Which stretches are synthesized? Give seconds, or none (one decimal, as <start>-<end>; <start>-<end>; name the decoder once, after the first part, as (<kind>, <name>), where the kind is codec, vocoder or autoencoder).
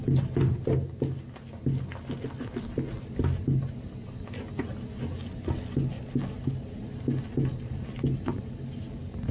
none